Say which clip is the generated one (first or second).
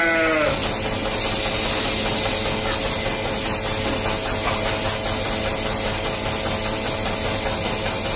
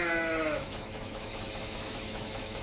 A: second